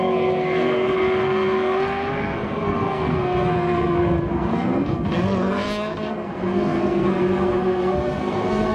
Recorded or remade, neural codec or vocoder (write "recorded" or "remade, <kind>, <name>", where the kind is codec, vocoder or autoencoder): remade, codec, SNAC